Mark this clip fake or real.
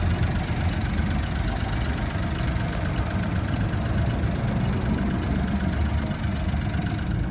real